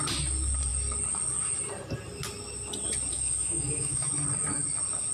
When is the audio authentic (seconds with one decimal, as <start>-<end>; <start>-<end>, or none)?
0.0-3.1; 4.1-5.1